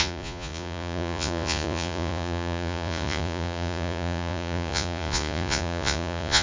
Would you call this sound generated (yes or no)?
yes